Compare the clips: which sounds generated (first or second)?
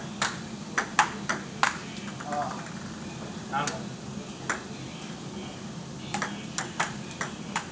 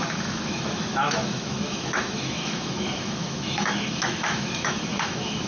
second